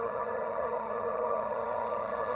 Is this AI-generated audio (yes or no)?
yes